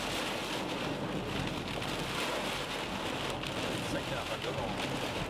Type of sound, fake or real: real